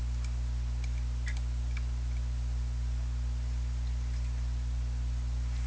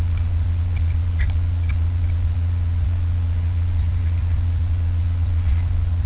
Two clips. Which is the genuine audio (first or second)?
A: first